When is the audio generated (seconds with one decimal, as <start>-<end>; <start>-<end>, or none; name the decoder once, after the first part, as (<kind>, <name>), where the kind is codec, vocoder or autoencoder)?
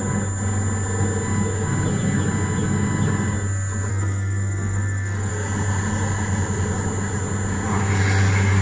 3.9-5.3 (codec, SNAC)